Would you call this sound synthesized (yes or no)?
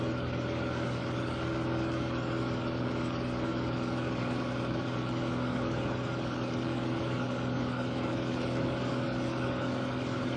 yes